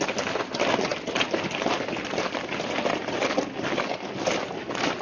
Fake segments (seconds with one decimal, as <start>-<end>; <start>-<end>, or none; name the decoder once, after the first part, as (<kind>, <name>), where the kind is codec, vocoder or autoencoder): none